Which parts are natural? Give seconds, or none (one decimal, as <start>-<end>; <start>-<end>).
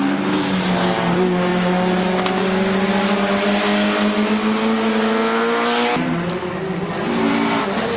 0.0-8.0